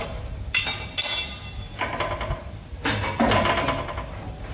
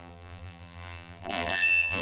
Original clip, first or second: first